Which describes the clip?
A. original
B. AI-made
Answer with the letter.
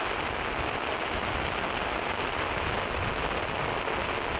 A